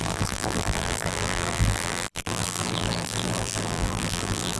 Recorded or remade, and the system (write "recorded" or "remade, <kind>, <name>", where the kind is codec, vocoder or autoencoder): remade, vocoder, BigVGAN v2